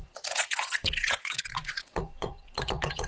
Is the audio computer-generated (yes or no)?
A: yes